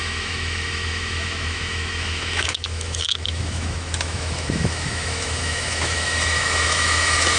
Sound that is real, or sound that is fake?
fake